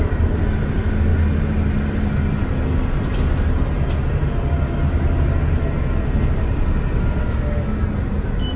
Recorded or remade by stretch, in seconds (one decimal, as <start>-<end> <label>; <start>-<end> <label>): 0.0-8.6 recorded